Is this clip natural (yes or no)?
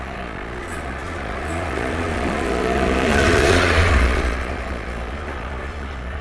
no